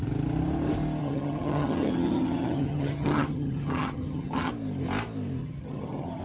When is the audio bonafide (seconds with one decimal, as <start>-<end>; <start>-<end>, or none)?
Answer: 0.0-1.0; 4.5-5.4